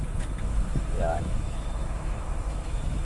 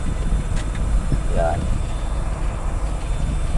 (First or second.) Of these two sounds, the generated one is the first